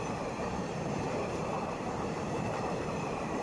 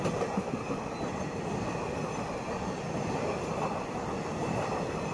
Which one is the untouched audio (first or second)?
second